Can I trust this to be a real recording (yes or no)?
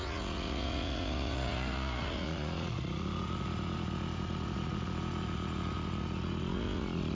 no